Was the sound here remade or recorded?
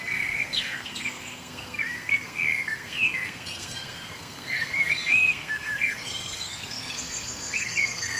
remade